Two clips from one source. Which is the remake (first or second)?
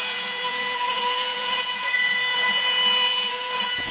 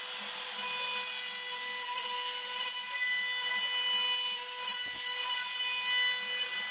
first